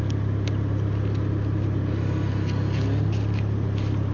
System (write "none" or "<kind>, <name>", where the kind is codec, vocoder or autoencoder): none